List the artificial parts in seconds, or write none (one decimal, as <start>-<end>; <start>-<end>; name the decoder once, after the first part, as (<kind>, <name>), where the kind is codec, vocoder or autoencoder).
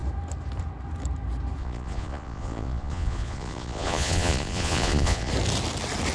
1.6-5.3 (vocoder, Vocos)